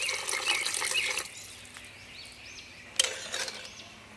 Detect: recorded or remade recorded